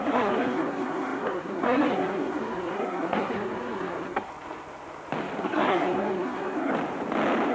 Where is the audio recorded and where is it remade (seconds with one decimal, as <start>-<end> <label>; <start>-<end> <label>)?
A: 0.0-4.3 remade; 4.3-5.4 recorded; 5.4-6.7 remade; 6.7-7.5 recorded